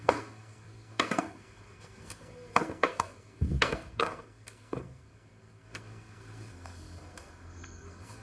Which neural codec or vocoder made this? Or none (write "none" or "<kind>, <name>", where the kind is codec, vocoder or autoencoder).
codec, SNAC